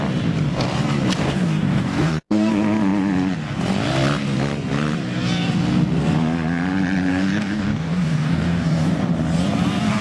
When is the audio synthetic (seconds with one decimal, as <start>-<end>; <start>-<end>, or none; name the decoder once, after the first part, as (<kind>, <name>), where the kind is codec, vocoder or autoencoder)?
1.2-2.5 (codec, DAC); 7.1-9.1